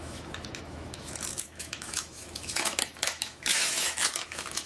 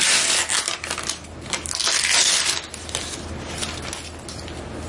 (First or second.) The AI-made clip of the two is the first